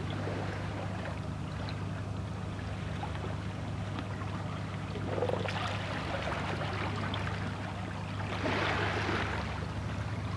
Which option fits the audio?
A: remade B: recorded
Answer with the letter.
B